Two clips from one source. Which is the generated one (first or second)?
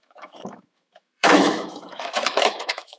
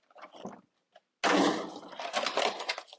first